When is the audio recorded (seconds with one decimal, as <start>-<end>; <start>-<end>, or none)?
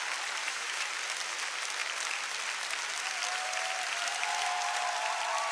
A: 0.0-0.4; 0.9-5.5